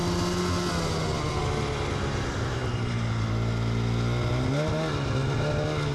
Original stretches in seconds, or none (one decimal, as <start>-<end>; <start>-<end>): 0.0-5.9